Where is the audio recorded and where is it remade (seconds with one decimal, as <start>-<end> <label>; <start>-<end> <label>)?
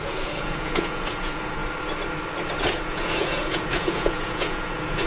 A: 0.0-1.6 remade; 1.6-2.7 recorded; 2.7-5.1 remade